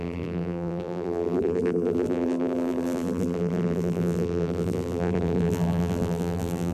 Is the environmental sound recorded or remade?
remade